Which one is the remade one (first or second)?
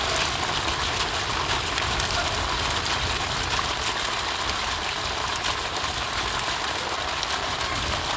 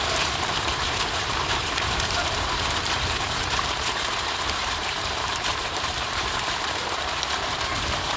second